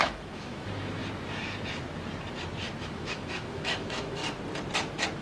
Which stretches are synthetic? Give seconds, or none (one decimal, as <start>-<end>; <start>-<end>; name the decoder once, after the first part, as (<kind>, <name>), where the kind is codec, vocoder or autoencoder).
0.0-1.0 (autoencoder, DAC-VAE); 2.8-4.2